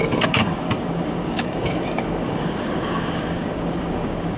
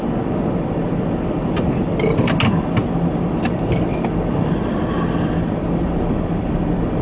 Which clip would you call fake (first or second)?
first